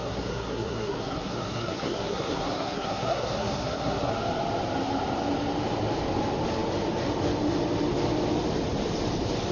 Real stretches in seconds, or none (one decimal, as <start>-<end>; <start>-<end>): 4.1-9.5